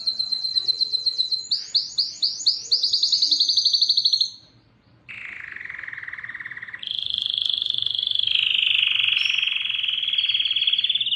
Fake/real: real